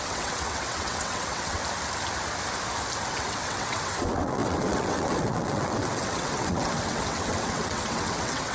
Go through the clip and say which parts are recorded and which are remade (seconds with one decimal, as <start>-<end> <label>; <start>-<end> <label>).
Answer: 0.0-1.6 remade; 1.6-3.1 recorded; 3.1-8.5 remade